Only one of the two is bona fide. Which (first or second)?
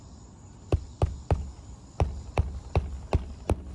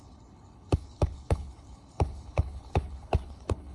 first